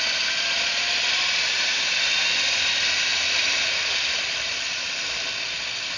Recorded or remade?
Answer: recorded